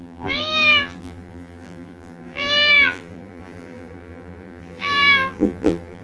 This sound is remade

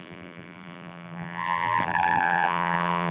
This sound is remade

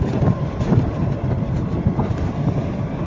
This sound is remade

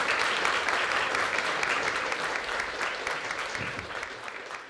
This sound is remade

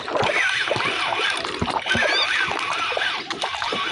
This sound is remade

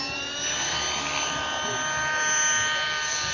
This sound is recorded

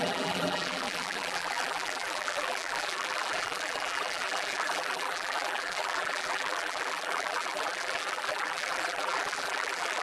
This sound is remade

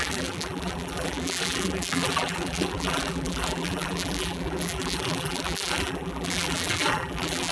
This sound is remade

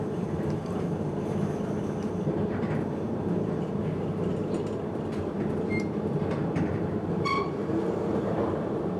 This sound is remade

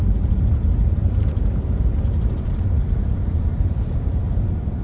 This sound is remade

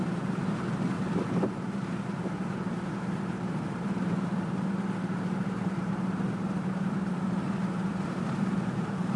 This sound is remade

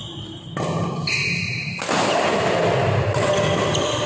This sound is recorded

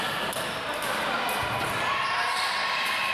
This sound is recorded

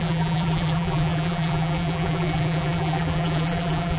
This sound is remade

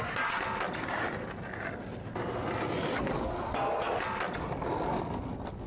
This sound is recorded